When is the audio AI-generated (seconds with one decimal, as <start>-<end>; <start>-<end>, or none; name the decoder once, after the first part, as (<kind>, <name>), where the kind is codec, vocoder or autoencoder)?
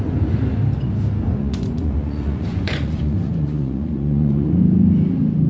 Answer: 1.3-4.6 (vocoder, Vocos)